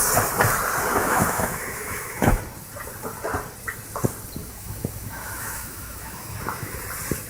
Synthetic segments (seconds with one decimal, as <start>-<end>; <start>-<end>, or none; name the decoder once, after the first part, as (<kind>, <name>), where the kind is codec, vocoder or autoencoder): 0.9-2.4 (autoencoder, DAC-VAE); 4.4-6.8

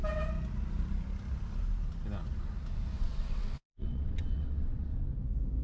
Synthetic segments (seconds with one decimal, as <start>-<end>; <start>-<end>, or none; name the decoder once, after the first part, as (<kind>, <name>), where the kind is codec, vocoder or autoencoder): 2.9-5.0 (vocoder, WaveNeXt)